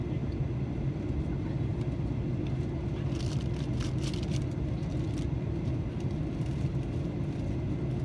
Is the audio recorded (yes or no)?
yes